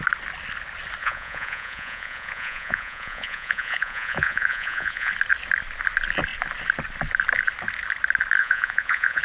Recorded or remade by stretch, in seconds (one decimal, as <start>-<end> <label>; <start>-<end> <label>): 0.0-1.0 recorded; 1.0-5.1 remade; 5.1-8.4 recorded; 8.4-9.2 remade